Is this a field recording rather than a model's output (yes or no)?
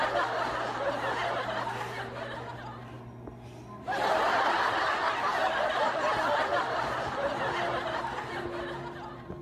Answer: yes